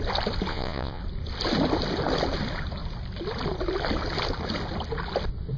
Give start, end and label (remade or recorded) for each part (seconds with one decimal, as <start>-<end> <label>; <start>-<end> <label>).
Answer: 0.0-0.5 recorded; 0.5-1.0 remade; 1.0-5.6 recorded